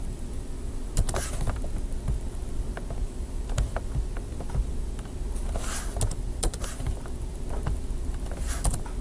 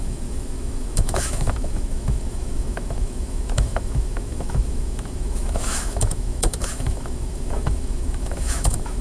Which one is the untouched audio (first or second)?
first